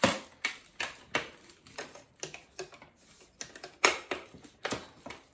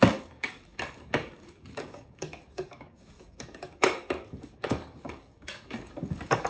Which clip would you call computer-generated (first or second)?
second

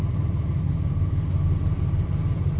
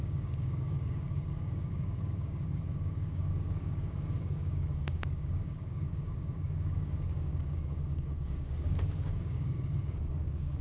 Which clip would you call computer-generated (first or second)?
second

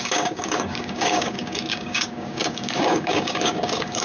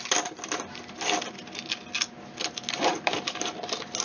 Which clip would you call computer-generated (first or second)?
first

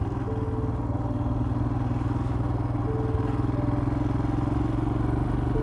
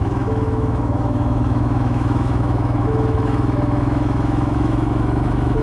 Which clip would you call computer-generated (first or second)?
second